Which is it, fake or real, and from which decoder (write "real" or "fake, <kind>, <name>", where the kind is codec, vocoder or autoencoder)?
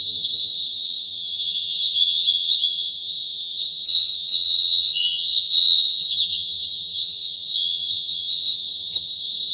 fake, vocoder, HiFi-GAN